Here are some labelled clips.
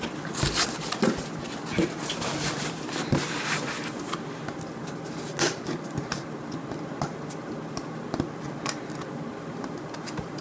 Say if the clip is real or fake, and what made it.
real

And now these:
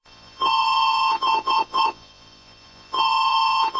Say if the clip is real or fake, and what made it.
fake, vocoder, Vocos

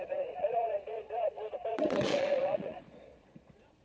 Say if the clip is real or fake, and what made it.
fake, vocoder, Vocos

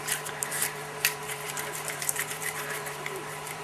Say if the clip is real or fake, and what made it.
fake, vocoder, BigVGAN v2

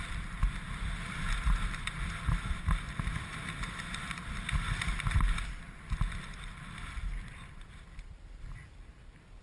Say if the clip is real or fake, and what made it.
real